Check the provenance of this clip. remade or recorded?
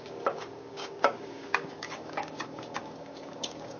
remade